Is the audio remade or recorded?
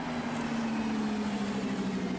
recorded